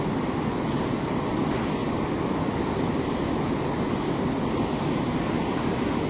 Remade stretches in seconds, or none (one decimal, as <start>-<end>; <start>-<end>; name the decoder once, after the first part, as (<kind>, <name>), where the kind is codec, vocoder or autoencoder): none